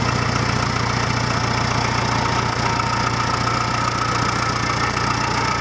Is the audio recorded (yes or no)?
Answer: yes